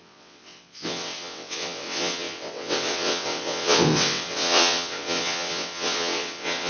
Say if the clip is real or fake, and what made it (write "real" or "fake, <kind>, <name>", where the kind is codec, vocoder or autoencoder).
fake, vocoder, WaveNeXt